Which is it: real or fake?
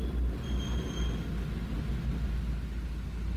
real